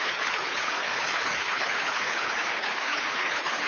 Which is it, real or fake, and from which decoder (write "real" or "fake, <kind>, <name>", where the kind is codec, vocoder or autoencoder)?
fake, codec, HILCodec